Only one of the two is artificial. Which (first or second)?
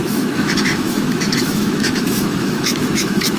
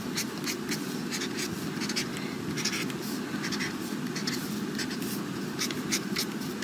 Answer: first